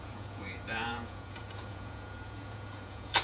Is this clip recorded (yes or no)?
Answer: no